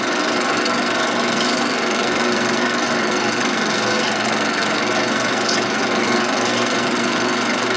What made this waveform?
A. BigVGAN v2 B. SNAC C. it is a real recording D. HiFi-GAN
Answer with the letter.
B